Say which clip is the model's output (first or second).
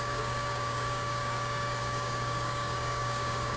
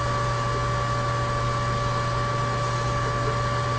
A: first